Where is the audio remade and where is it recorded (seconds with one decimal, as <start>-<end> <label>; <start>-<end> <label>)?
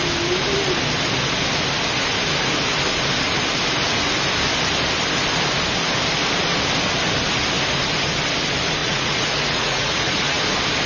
0.0-8.8 recorded; 8.8-10.4 remade; 10.4-10.9 recorded